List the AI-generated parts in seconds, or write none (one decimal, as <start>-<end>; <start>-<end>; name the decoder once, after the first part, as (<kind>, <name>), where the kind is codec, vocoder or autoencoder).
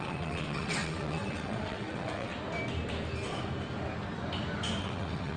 0.0-2.3 (vocoder, WaveNeXt); 4.8-5.4